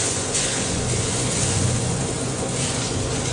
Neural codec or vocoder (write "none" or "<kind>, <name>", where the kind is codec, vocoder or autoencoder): vocoder, Vocos